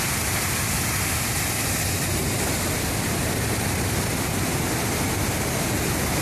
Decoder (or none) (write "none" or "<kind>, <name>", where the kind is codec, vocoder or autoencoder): none